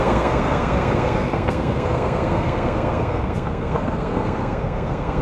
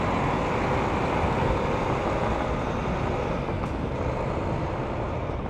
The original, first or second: second